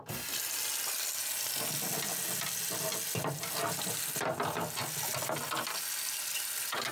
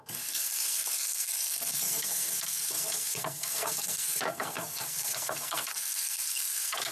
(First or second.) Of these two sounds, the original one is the first